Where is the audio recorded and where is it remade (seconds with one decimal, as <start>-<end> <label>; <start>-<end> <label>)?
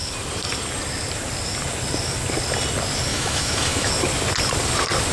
0.0-3.1 recorded; 3.1-3.9 remade; 3.9-5.1 recorded